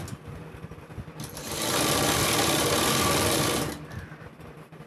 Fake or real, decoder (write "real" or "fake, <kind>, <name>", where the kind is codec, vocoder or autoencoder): real